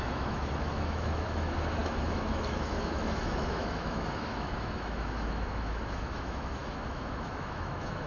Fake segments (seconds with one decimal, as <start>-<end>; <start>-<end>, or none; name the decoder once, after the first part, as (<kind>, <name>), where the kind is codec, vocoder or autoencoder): 0.0-8.1 (autoencoder, DAC-VAE)